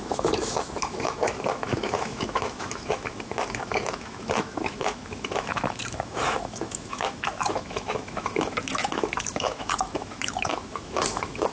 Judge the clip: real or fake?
fake